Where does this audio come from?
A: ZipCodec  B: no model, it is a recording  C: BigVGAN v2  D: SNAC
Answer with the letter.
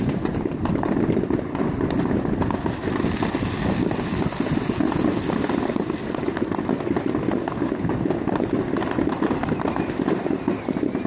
C